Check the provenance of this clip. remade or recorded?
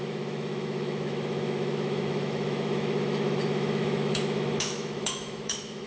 remade